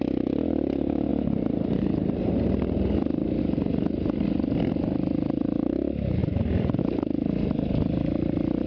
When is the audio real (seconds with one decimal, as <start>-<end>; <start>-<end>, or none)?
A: 0.0-1.1; 3.4-6.2; 6.8-8.7

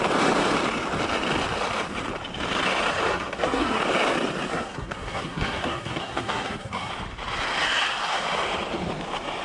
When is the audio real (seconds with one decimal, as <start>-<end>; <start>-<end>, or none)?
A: 0.0-3.1; 3.8-4.5; 6.9-9.4

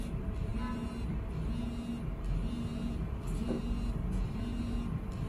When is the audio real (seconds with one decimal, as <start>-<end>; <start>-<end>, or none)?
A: 0.0-5.3